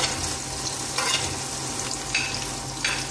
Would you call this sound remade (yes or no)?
no